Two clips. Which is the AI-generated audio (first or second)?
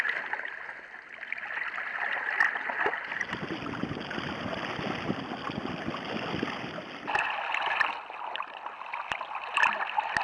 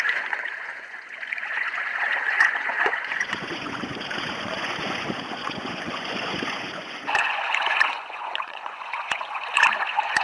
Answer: second